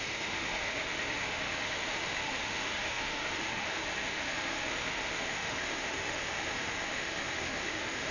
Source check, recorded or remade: remade